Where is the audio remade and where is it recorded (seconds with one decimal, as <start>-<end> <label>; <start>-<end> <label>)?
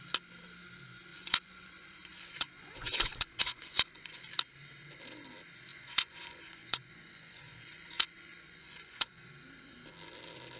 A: 0.0-1.1 recorded; 1.1-4.3 remade; 4.3-5.7 recorded; 5.7-9.3 remade; 9.3-10.6 recorded